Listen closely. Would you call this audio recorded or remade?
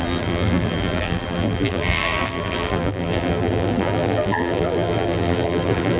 remade